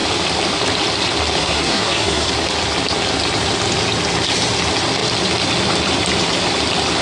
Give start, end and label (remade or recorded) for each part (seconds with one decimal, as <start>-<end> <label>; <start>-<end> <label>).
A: 0.0-1.4 recorded; 1.4-2.3 remade; 2.3-7.0 recorded